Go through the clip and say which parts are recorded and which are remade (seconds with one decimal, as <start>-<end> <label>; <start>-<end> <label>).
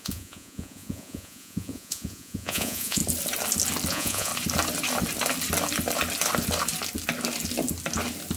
0.0-3.0 remade; 3.0-3.9 recorded; 3.9-4.3 remade; 4.3-8.4 recorded